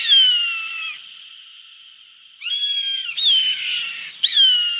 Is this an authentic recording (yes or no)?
yes